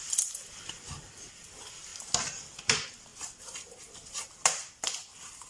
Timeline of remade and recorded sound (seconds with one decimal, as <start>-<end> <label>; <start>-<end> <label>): 0.0-5.5 recorded

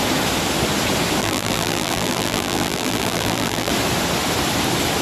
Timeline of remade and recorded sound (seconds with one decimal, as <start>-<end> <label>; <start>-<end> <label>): 0.0-1.2 recorded; 1.2-3.7 remade; 3.7-5.0 recorded

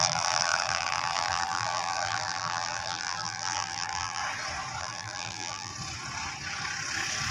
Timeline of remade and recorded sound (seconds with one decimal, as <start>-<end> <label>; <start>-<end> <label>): 0.0-4.2 remade; 4.2-4.8 recorded; 4.8-5.7 remade; 5.7-7.3 recorded

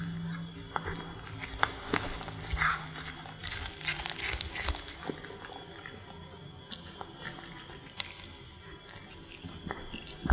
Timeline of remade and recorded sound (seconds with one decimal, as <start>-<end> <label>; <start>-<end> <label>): 0.0-10.3 recorded

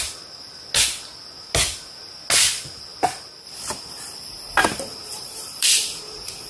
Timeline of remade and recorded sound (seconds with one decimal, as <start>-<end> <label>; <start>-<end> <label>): 0.0-4.6 recorded; 4.6-5.7 remade; 5.7-6.5 recorded

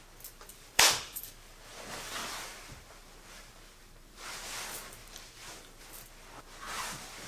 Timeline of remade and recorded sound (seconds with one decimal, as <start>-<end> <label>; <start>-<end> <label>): 0.0-0.5 recorded; 0.5-1.2 remade; 1.2-2.2 recorded; 2.2-4.5 remade; 4.5-5.0 recorded; 5.0-5.8 remade; 5.8-7.3 recorded

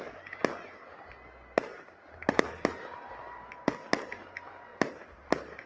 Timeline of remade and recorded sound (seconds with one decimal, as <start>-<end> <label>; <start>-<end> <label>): 0.0-1.7 recorded; 1.7-3.7 remade; 3.7-4.7 recorded; 4.7-5.7 remade

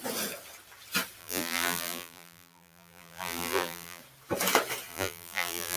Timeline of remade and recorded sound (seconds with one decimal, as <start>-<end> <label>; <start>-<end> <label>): 0.0-1.2 recorded; 1.2-4.0 remade; 4.0-4.9 recorded; 4.9-5.8 remade